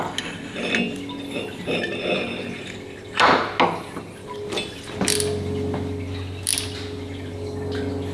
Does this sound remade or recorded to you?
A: recorded